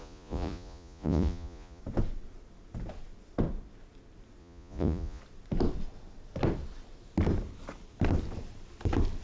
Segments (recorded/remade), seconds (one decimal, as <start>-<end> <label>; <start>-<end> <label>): 0.0-1.8 remade; 1.8-4.4 recorded; 4.4-5.2 remade; 5.2-9.2 recorded